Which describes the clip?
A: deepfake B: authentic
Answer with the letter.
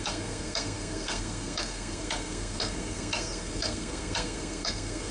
A